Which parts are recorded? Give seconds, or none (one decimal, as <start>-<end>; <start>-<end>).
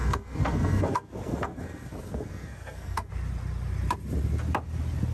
3.1-5.1